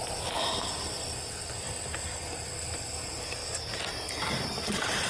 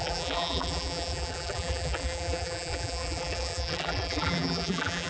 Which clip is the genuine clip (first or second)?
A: first